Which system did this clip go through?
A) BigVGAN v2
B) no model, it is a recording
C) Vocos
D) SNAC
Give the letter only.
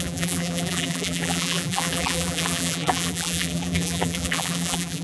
A